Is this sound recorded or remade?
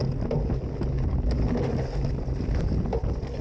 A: recorded